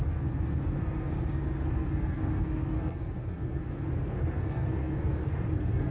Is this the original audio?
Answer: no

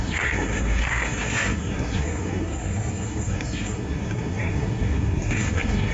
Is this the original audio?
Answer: no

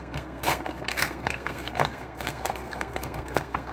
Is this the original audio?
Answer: no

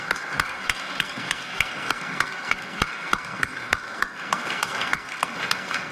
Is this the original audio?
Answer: no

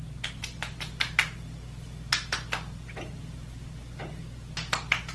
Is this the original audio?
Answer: yes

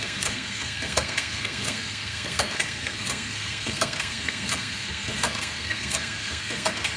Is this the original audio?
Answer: no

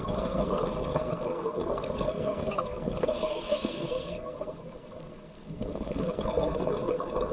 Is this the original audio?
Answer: no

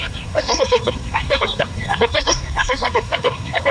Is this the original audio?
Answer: no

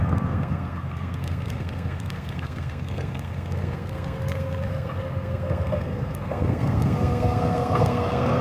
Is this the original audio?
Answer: no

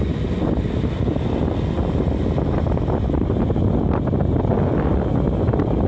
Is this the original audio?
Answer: yes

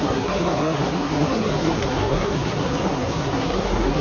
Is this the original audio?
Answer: no